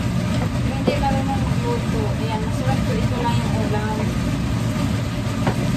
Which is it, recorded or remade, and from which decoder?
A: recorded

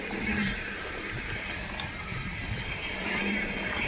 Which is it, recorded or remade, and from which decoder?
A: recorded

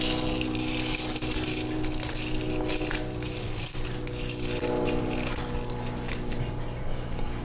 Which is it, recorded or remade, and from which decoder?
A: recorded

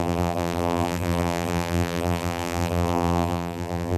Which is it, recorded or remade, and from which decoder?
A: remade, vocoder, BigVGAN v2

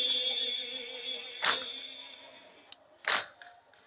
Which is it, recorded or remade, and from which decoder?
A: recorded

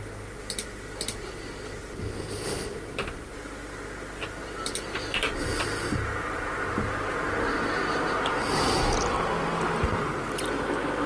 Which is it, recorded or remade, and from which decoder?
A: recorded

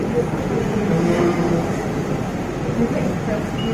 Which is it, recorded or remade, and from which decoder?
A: recorded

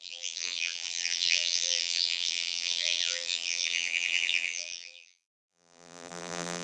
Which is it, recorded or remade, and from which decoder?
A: remade, vocoder, BigVGAN v2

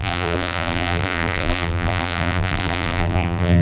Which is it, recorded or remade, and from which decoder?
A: remade, vocoder, BigVGAN v2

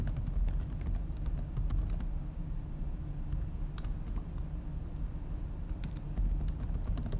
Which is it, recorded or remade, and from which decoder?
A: recorded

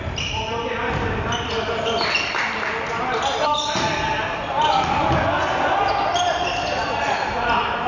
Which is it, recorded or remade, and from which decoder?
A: recorded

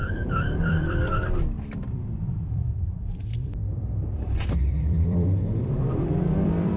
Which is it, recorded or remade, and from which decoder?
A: remade, vocoder, BigVGAN v2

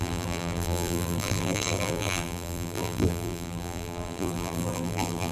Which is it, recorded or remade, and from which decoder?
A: remade, vocoder, BigVGAN v2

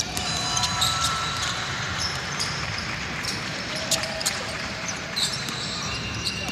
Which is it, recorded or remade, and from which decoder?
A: remade, vocoder, BigVGAN v2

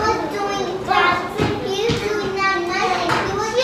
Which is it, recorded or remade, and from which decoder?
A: recorded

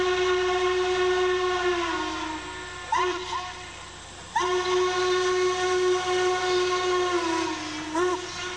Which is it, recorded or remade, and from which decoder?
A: recorded